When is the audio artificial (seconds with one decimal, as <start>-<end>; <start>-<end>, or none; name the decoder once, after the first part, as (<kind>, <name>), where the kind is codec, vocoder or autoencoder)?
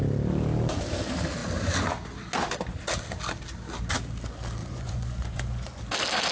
4.6-5.8 (vocoder, Vocos)